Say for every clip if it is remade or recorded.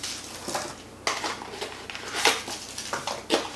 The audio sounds recorded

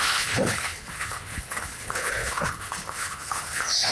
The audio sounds remade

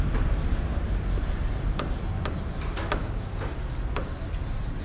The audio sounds recorded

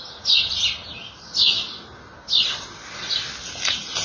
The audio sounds recorded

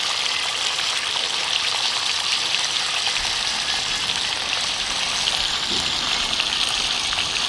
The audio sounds recorded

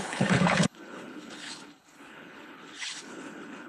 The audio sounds remade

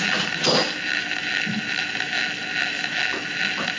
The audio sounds recorded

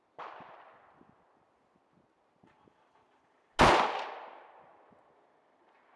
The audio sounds recorded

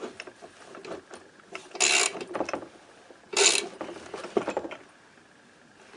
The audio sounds recorded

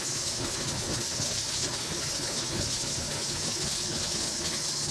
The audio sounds remade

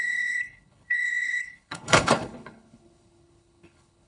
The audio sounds remade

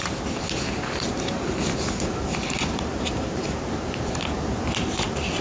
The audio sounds recorded